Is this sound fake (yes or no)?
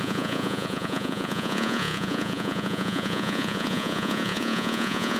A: yes